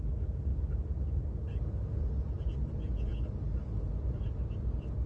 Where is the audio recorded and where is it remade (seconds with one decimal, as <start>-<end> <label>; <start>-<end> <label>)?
0.0-5.1 recorded